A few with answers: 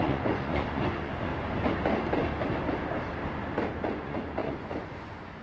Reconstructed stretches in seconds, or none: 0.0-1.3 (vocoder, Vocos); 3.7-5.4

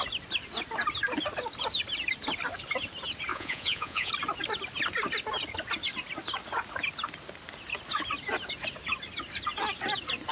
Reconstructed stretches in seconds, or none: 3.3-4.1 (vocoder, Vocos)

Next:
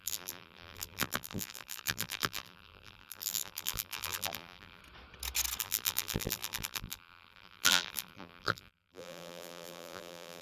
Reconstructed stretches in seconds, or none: 0.0-4.8 (vocoder, BigVGAN v2); 5.6-10.4